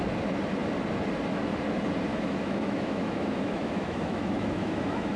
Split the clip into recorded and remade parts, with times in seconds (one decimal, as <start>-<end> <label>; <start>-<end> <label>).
0.0-2.1 recorded; 2.1-5.2 remade